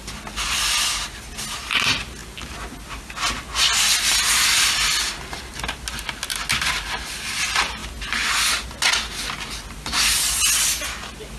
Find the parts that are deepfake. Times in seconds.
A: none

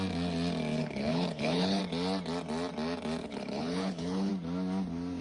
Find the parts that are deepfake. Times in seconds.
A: 0.8-1.8 (codec, HILCodec); 3.2-4.3

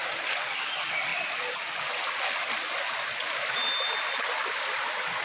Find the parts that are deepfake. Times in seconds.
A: none

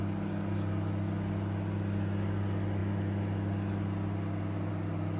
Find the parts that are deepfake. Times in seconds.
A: none